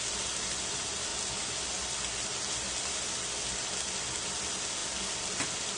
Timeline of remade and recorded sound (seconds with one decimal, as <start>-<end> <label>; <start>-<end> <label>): 0.0-5.8 recorded